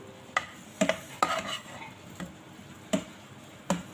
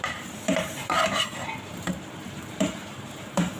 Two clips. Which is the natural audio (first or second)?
first